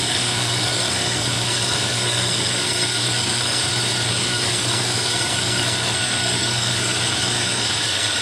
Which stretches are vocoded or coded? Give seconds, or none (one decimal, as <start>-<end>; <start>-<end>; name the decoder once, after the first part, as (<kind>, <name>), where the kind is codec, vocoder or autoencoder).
0.0-3.6 (codec, SNAC); 4.1-8.2